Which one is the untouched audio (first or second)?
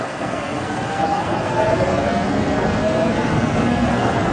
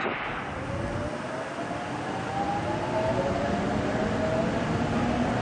second